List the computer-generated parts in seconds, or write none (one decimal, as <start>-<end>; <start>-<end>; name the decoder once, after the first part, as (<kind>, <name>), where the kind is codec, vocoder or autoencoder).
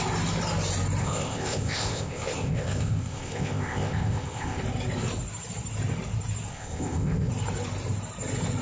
1.0-4.6 (codec, ZipCodec); 6.5-7.3